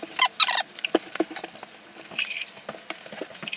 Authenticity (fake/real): real